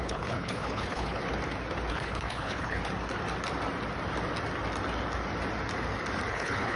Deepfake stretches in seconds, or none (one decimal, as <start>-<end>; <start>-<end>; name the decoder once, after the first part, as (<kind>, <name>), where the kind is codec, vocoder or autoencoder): 0.0-1.2 (codec, HILCodec); 1.9-2.8; 6.3-6.8